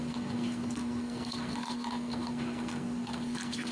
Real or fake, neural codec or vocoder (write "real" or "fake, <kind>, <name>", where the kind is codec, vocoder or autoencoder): fake, codec, SNAC